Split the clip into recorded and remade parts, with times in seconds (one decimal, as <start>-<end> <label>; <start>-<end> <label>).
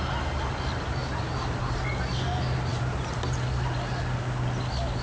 0.0-1.0 recorded; 1.0-1.8 remade; 1.8-2.7 recorded; 2.7-3.2 remade; 3.2-5.0 recorded